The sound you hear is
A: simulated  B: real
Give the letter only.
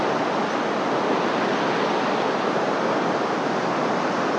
B